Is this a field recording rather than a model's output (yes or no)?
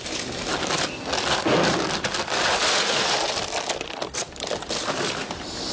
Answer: yes